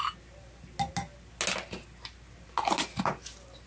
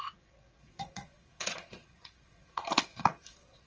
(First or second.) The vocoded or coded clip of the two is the second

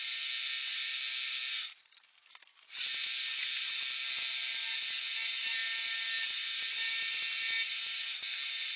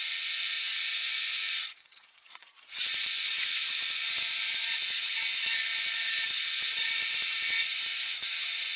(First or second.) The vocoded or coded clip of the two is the second